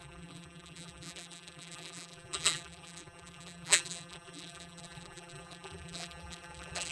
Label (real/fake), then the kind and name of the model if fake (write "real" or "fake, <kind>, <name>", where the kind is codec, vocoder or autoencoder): fake, vocoder, BigVGAN v2